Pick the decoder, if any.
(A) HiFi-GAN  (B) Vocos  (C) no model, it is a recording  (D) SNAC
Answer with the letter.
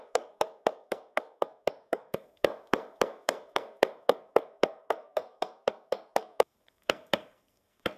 D